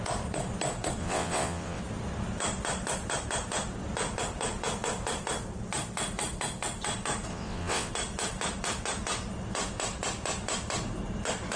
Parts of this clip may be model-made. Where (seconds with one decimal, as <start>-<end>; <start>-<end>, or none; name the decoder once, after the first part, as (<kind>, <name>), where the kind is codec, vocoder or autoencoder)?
1.0-1.8 (vocoder, WaveNeXt); 7.3-7.9